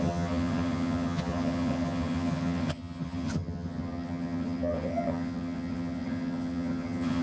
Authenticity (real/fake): fake